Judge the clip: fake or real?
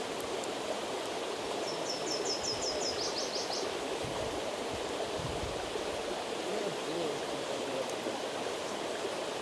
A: real